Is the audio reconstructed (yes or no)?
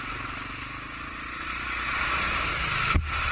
no